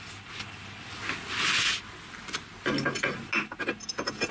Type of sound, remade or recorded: recorded